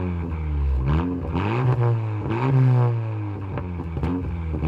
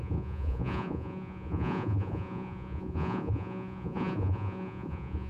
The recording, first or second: first